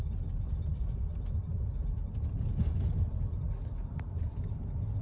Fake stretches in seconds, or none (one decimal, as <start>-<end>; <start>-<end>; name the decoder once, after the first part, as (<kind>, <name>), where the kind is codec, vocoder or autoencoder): 0.7-1.7 (vocoder, BigVGAN v2)